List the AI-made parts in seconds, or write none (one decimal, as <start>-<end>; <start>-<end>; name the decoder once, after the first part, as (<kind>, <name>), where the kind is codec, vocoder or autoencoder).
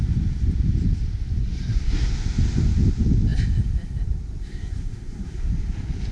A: 1.4-2.1 (codec, SNAC); 4.4-5.5